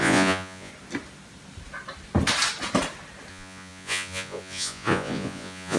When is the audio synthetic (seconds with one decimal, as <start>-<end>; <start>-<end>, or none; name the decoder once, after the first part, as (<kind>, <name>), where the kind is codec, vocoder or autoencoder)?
0.0-0.7 (vocoder, Vocos); 3.3-5.8